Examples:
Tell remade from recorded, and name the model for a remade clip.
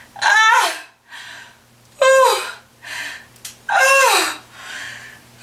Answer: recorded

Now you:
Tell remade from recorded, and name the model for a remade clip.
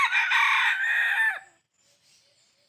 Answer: recorded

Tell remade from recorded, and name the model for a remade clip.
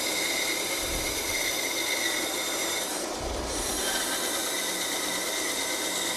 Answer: remade, vocoder, BigVGAN v2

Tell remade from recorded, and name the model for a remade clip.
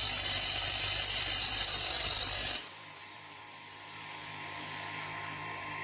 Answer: remade, vocoder, BigVGAN v2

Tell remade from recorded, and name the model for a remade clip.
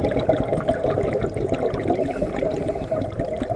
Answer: remade, vocoder, BigVGAN v2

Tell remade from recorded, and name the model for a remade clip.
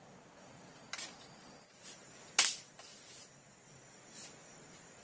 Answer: recorded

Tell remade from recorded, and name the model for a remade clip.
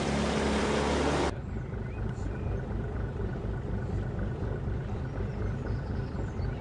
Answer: remade, vocoder, BigVGAN v2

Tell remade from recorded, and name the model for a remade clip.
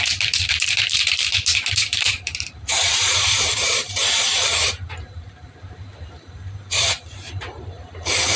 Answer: remade, vocoder, BigVGAN v2